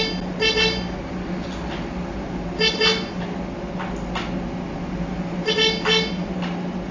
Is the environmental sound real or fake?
real